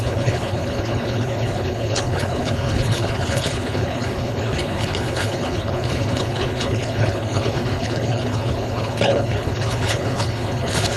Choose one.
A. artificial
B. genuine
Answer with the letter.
A